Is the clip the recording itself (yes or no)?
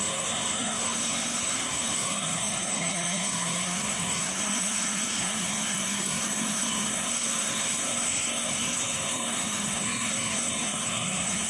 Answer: no